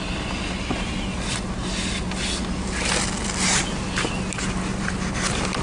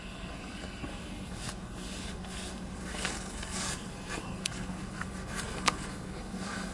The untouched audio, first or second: first